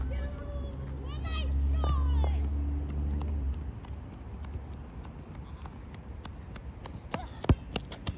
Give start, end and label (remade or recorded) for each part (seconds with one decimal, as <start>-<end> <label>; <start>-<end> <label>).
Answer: 0.0-8.2 recorded